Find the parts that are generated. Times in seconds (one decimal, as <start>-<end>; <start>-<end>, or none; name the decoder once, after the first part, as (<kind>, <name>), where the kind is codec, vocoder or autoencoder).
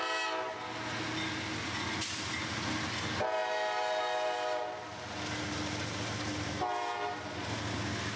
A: none